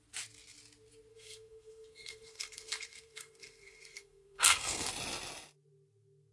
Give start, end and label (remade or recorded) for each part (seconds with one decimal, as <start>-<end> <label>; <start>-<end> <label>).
0.0-1.1 recorded; 1.1-4.9 remade; 4.9-6.3 recorded